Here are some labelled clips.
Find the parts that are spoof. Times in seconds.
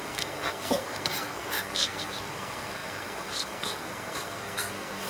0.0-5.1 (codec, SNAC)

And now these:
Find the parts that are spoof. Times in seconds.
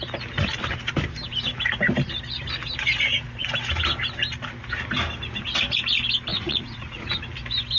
6.3-7.2 (vocoder, Vocos)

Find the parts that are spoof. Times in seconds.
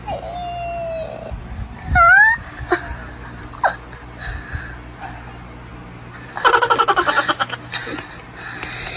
none